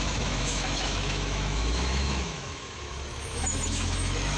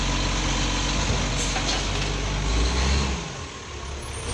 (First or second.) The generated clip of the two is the first